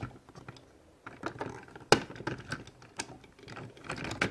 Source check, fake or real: real